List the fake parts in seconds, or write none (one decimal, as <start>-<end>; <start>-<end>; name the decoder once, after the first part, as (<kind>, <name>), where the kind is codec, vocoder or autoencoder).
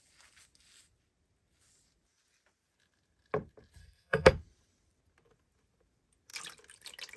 3.8-4.3 (codec, SNAC)